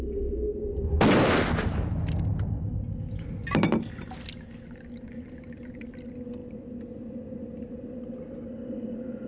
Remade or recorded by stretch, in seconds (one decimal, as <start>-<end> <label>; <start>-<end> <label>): 0.0-9.3 recorded